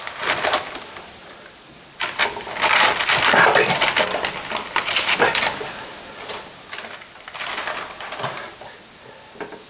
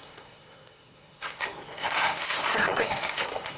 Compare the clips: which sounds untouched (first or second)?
first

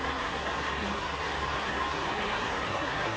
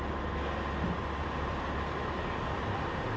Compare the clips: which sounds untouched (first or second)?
second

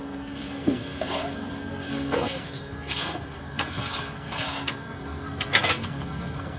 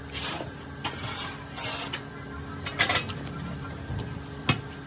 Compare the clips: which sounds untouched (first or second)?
second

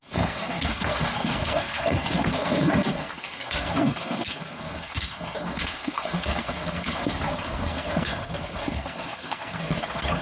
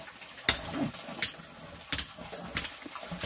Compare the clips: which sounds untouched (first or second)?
second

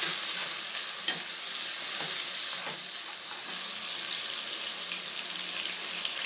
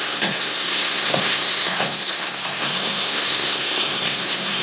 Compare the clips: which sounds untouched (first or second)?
first